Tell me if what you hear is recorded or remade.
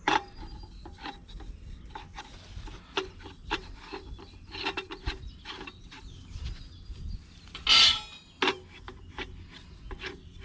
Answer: recorded